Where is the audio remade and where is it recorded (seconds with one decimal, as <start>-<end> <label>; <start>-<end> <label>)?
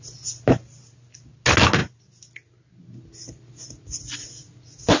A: 0.0-5.0 recorded